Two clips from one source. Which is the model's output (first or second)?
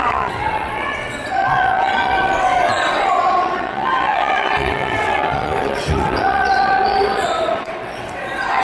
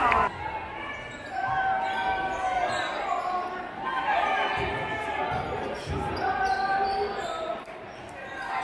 first